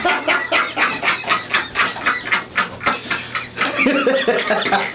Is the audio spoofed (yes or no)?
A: no